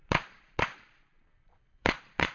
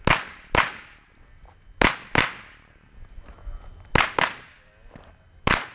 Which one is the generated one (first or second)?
first